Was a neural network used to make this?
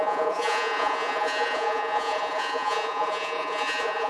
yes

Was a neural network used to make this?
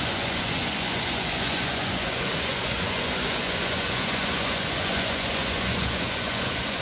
yes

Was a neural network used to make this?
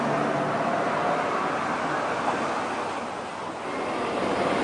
no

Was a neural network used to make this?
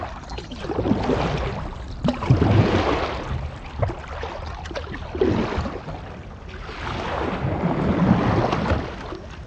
no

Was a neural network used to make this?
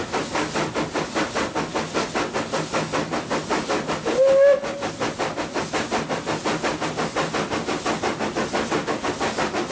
no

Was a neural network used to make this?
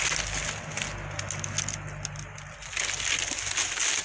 no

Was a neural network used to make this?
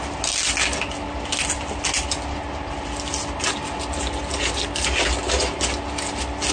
no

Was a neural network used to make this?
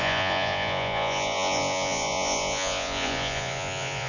yes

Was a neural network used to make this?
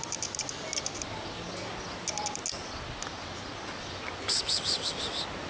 no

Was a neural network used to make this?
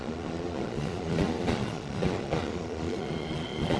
yes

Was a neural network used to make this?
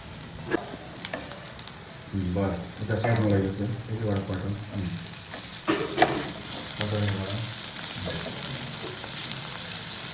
no